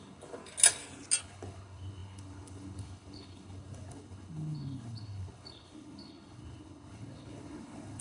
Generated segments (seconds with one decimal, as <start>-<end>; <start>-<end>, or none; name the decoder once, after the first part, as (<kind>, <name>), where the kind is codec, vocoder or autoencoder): 0.0-0.4 (codec, HILCodec); 1.2-8.0